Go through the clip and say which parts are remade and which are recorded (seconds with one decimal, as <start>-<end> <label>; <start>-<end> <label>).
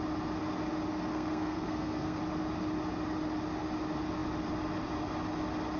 0.0-1.1 recorded; 1.1-2.2 remade; 2.2-5.8 recorded